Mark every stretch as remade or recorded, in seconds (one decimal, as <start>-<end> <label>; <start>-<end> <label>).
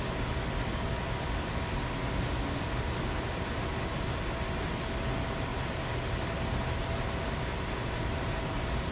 0.0-5.5 recorded; 5.5-6.3 remade; 6.3-7.5 recorded; 7.5-8.9 remade